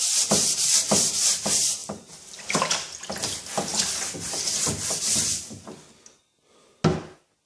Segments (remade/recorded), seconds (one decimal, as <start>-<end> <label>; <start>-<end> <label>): 0.0-1.8 recorded; 1.8-2.7 remade; 2.7-3.7 recorded; 3.7-5.6 remade; 5.6-7.5 recorded